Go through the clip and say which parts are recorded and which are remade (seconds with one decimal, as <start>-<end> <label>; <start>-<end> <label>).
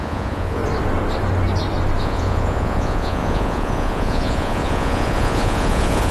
0.0-0.6 remade; 0.6-2.0 recorded; 2.0-6.1 remade